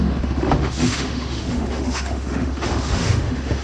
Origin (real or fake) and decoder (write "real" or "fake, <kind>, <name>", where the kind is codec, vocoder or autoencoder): fake, autoencoder, DAC-VAE